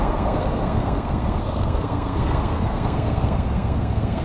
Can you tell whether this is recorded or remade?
remade